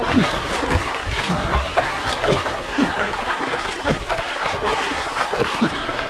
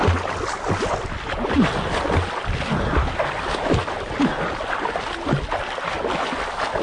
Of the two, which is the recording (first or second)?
second